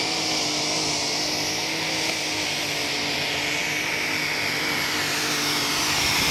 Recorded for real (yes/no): yes